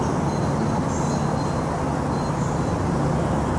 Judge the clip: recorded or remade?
recorded